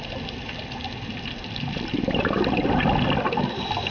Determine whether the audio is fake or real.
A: real